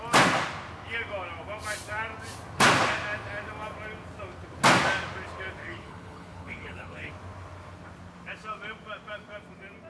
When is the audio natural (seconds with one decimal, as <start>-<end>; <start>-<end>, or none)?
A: 0.0-5.6; 7.1-9.9